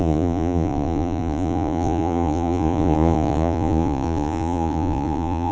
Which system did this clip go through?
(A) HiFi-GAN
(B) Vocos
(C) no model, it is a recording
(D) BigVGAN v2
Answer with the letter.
B